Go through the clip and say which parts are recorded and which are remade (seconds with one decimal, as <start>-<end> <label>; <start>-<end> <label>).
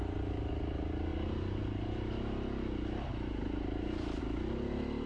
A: 0.0-5.1 recorded